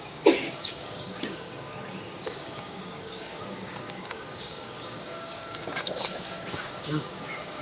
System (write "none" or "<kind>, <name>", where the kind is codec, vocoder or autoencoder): codec, DAC